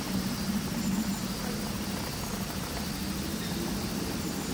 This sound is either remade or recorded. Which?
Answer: recorded